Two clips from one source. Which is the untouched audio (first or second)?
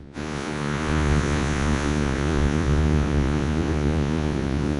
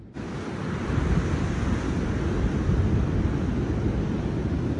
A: second